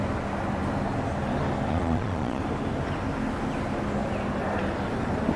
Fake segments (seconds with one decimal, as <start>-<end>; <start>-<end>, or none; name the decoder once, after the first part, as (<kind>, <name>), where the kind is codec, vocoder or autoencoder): 1.7-2.4 (vocoder, Vocos)